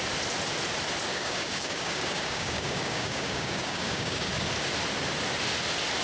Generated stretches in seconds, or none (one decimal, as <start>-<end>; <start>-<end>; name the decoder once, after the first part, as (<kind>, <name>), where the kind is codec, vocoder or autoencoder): 1.1-4.3 (codec, DAC)